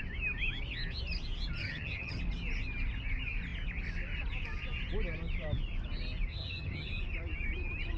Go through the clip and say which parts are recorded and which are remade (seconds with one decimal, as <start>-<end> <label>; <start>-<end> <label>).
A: 0.0-1.6 recorded; 1.6-2.2 remade; 2.2-6.3 recorded; 6.3-6.9 remade; 6.9-8.0 recorded